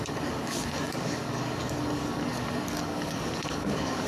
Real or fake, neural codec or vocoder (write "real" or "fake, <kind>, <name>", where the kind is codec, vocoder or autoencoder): fake, codec, DAC